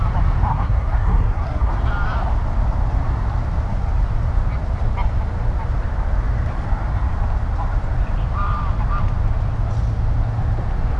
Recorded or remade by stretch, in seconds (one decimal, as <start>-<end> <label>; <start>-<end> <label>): 0.0-0.5 recorded; 0.5-1.7 remade; 1.7-11.0 recorded